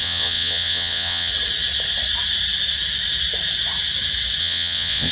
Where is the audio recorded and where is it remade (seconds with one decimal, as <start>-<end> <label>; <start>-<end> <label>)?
0.0-1.3 remade; 1.3-4.4 recorded; 4.4-5.1 remade